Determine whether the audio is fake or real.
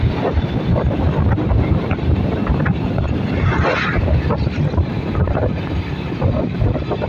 real